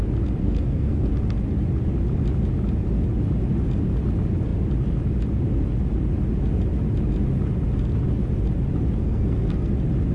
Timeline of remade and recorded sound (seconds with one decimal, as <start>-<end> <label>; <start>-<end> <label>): 0.0-0.4 recorded; 0.4-1.1 remade; 1.1-9.0 recorded; 9.0-9.7 remade; 9.7-10.1 recorded